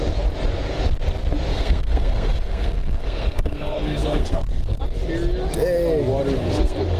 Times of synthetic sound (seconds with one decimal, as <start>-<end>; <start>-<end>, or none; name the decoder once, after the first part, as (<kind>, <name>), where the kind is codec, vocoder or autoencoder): 1.5-4.8 (codec, SNAC); 6.4-7.0